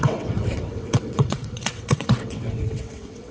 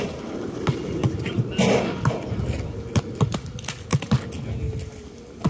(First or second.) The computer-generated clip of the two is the first